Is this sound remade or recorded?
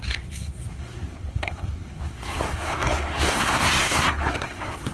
remade